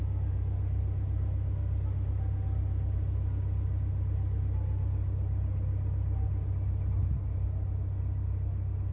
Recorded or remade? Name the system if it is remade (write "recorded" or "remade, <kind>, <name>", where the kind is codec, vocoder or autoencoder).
recorded